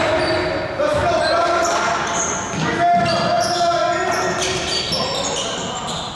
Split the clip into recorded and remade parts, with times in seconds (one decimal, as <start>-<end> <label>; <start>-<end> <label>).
0.0-6.1 recorded